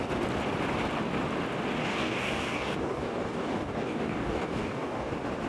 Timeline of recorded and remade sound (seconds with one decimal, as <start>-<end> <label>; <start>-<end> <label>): 0.0-1.8 recorded; 1.8-5.1 remade; 5.1-5.5 recorded